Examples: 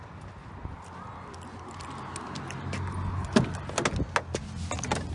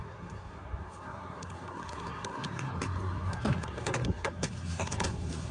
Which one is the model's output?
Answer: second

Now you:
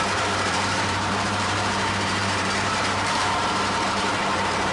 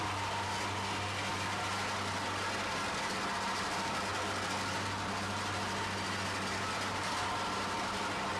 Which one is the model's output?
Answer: first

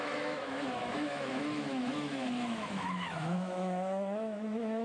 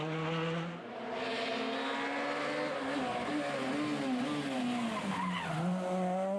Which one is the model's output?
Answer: first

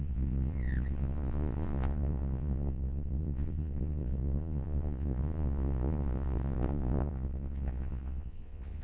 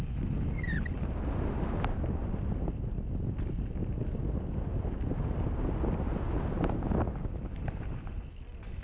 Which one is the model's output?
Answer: first